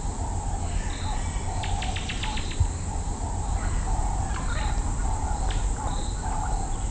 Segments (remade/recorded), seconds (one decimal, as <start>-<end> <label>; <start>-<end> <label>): 0.0-6.9 recorded